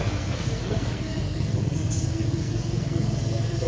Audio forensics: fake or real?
fake